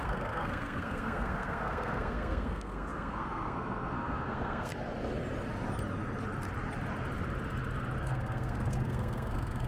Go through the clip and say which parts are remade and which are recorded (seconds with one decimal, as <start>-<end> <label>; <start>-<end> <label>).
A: 0.0-4.7 remade; 4.7-8.0 recorded; 8.0-9.7 remade